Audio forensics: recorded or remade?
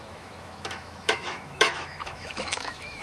remade